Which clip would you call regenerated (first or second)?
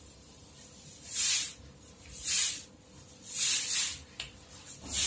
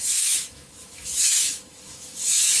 second